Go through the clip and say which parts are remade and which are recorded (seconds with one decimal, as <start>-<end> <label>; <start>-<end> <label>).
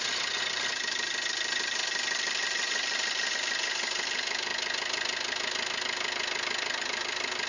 0.0-4.5 remade; 4.5-6.8 recorded; 6.8-7.5 remade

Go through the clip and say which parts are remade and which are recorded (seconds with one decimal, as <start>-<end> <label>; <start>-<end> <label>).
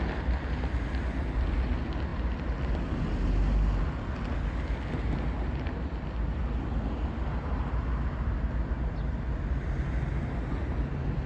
0.0-11.3 recorded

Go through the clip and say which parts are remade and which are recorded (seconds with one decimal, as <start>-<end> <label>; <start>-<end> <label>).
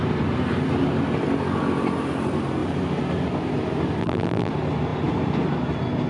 0.0-4.0 recorded; 4.0-4.5 remade; 4.5-6.1 recorded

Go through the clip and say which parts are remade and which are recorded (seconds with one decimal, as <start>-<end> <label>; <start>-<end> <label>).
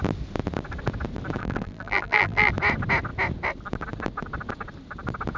0.0-1.4 recorded; 1.4-2.5 remade; 2.5-5.4 recorded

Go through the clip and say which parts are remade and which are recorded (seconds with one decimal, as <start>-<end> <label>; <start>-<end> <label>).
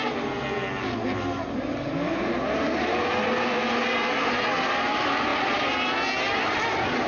0.0-7.1 recorded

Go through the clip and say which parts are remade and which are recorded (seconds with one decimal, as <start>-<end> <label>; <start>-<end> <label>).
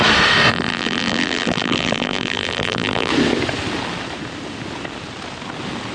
0.0-0.5 recorded; 0.5-3.1 remade; 3.1-5.9 recorded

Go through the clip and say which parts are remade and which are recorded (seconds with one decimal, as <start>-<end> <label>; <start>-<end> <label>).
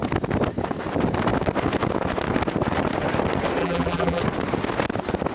0.0-3.6 recorded; 3.6-4.2 remade; 4.2-5.3 recorded